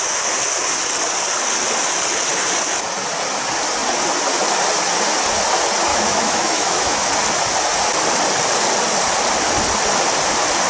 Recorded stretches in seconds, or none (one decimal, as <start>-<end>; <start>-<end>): 0.0-5.9; 7.1-10.7